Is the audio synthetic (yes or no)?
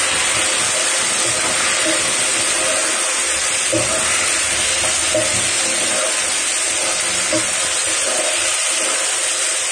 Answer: no